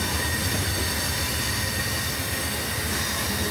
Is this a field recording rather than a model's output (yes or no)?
yes